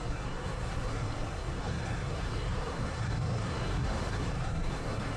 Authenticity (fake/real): fake